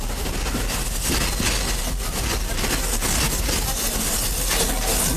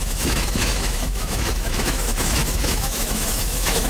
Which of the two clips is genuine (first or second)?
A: first